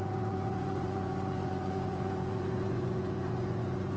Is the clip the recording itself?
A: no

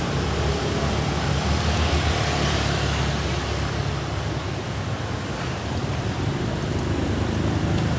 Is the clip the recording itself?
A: no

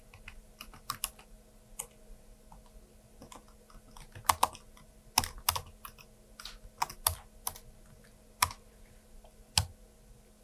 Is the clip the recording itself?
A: yes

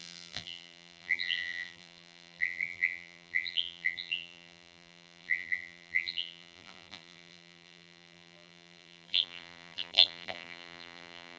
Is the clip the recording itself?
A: no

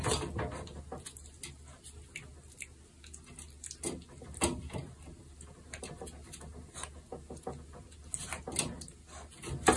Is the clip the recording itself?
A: yes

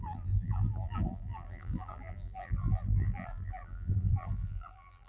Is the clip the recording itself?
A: no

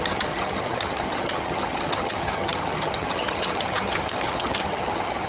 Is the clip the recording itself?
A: no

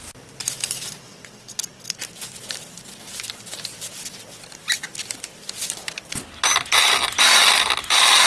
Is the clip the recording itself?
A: yes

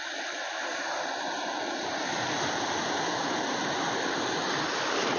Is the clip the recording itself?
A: yes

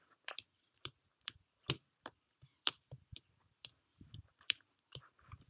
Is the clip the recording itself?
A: no